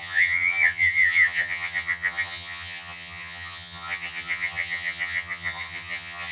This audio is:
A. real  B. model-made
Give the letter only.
B